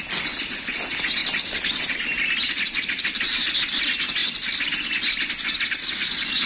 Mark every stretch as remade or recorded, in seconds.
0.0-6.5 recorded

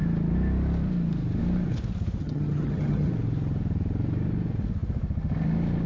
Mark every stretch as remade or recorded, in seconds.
0.0-2.2 recorded; 2.2-3.1 remade; 3.1-5.9 recorded

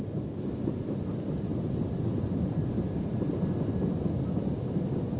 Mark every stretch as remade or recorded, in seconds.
0.0-5.2 recorded

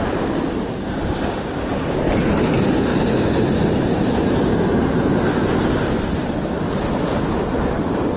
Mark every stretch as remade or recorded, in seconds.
0.0-0.7 recorded; 0.7-2.0 remade; 2.0-8.2 recorded